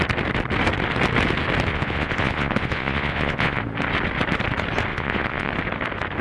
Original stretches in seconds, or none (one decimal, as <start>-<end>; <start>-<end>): 0.0-1.7; 3.6-4.9; 5.5-6.2